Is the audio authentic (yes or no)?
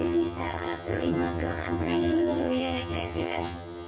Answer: no